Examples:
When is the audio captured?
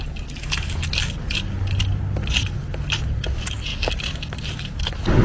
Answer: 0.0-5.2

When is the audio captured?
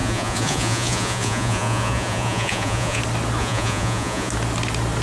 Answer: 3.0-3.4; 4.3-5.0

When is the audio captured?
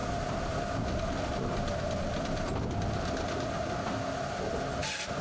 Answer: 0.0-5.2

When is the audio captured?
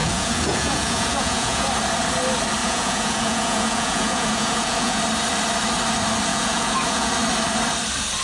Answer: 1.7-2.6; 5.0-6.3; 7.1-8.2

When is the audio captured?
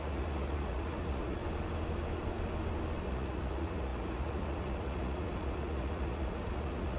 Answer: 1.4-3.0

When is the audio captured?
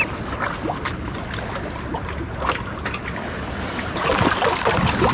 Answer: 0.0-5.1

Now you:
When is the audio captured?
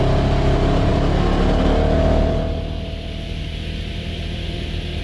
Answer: 0.0-5.0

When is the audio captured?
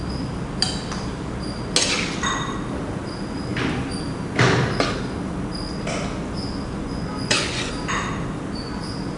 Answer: 0.0-6.7; 7.7-9.2